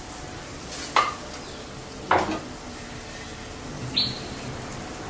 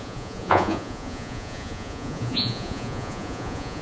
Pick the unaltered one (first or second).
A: first